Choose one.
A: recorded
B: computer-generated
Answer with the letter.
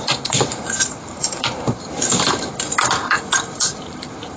B